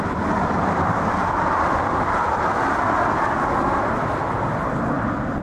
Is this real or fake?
real